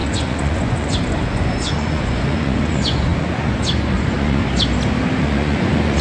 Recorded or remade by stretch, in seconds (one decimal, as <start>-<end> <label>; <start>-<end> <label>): 0.0-4.4 remade; 4.4-5.2 recorded; 5.2-6.0 remade